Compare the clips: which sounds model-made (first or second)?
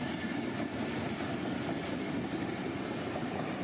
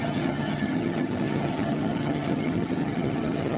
second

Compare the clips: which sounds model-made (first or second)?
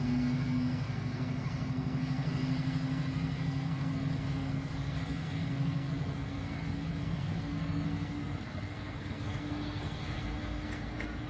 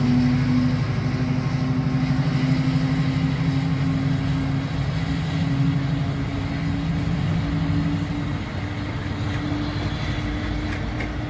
first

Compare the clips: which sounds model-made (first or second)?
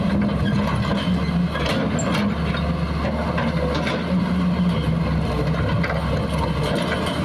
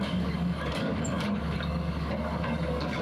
second